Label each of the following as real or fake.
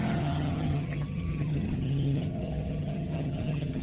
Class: fake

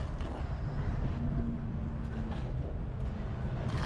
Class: real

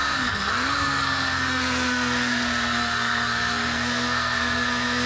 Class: fake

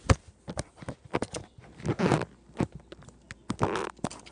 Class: real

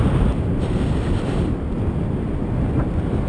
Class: real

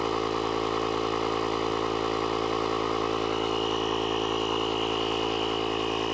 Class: real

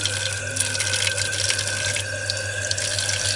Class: real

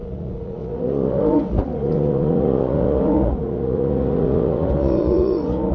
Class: fake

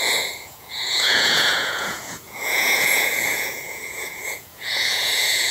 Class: fake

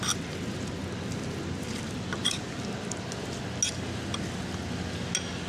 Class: real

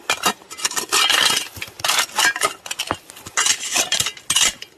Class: real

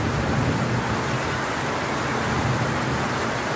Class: real